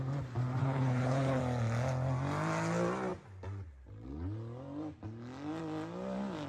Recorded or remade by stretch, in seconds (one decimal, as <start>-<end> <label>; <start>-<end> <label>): 0.0-0.6 recorded; 0.6-1.4 remade; 1.4-6.5 recorded